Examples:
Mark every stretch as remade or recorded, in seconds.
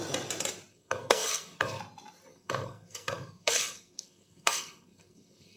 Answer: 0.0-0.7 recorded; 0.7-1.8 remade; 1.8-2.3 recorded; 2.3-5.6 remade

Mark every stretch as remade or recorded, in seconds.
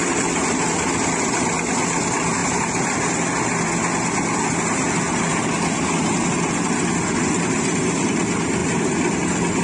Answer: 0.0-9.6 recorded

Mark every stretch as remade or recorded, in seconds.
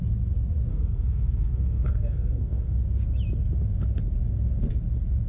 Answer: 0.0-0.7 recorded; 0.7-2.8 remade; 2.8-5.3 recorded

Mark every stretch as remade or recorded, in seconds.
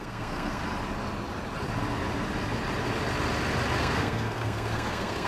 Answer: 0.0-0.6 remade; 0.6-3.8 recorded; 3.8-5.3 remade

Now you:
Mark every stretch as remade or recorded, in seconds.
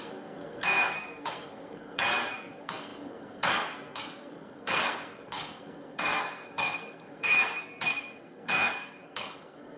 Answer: 0.0-9.8 remade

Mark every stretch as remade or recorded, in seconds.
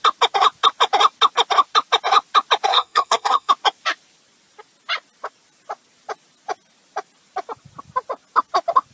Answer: 0.0-2.7 recorded; 2.7-3.5 remade; 3.5-8.9 recorded